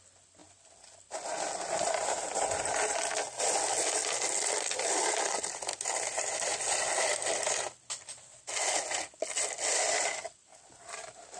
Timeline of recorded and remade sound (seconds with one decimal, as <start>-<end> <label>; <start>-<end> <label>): 0.0-11.4 recorded

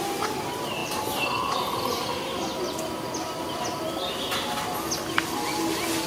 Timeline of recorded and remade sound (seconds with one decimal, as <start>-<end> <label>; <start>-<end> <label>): 0.0-2.1 remade; 2.1-6.1 recorded

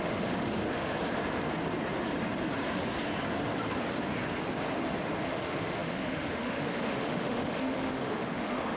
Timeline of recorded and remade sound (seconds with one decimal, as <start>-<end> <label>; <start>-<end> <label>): 0.0-0.9 remade; 0.9-5.2 recorded; 5.2-8.8 remade

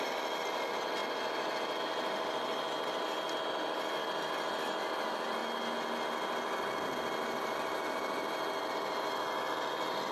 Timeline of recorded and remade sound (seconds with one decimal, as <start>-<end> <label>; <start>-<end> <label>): 0.0-10.1 recorded

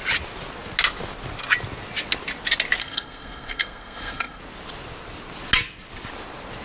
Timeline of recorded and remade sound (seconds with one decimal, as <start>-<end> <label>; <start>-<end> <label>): 0.0-2.8 recorded; 2.8-4.4 remade; 4.4-6.6 recorded

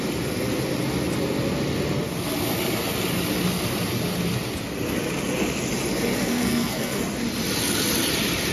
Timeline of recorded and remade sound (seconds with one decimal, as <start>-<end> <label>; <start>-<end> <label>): 0.0-6.1 recorded; 6.1-7.0 remade; 7.0-8.5 recorded

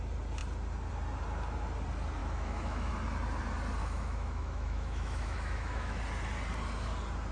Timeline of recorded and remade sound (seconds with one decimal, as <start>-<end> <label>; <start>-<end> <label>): 0.0-2.2 recorded; 2.2-2.9 remade; 2.9-3.8 recorded; 3.8-6.0 remade; 6.0-7.3 recorded